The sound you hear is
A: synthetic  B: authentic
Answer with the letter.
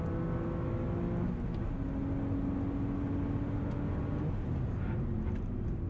B